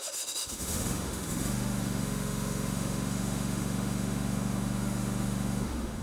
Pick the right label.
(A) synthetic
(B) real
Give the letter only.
A